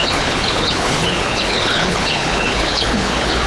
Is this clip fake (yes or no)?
yes